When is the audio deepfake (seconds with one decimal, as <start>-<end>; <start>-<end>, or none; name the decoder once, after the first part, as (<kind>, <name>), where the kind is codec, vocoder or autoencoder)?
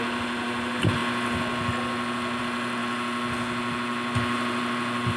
none